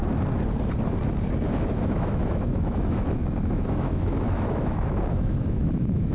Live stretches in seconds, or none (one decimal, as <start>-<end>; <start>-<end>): 0.0-1.7